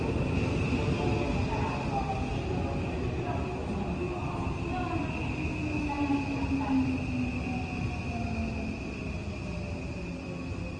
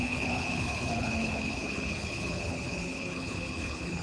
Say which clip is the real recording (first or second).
first